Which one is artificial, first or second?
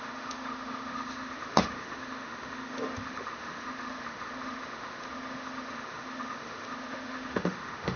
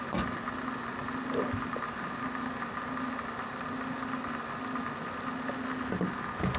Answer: first